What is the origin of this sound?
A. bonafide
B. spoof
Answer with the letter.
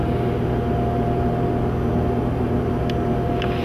A